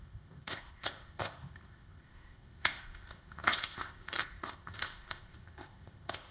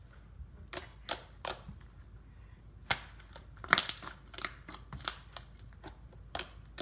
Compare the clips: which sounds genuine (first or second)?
second